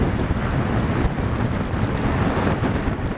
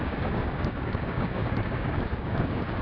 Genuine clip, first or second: first